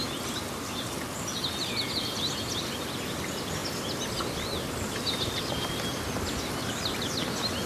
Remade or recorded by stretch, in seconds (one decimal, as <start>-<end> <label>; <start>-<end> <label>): 0.0-7.7 recorded